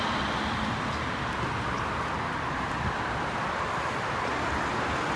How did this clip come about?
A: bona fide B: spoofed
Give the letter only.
A